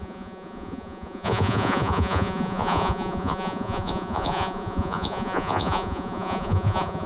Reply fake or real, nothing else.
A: fake